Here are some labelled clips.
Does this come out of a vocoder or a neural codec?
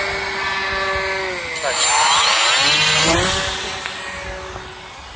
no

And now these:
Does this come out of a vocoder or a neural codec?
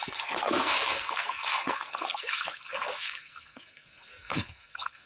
yes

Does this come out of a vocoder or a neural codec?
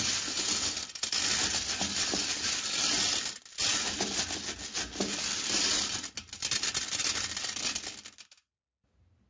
no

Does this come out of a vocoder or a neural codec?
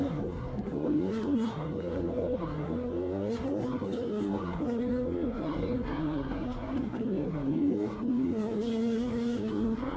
yes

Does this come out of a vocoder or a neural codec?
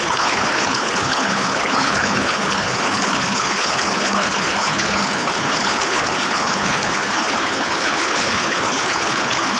yes